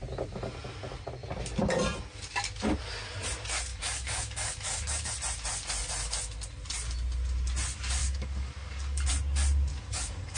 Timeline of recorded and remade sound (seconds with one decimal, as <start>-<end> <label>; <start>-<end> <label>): 0.0-3.7 recorded; 3.7-5.1 remade; 5.1-8.0 recorded; 8.0-9.1 remade; 9.1-9.7 recorded; 9.7-10.4 remade